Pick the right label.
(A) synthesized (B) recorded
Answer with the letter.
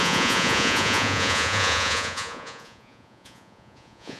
A